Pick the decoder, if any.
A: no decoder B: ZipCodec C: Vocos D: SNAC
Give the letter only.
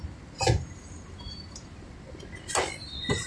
A